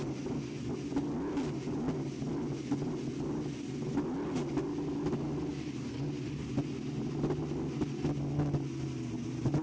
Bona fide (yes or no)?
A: yes